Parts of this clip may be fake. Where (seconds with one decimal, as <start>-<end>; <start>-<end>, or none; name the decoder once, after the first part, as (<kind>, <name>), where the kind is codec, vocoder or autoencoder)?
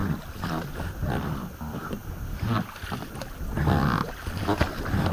none